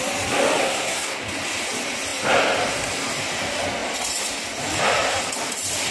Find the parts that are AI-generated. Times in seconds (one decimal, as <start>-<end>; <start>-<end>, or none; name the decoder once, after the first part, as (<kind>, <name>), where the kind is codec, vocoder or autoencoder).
0.6-1.2 (codec, SNAC)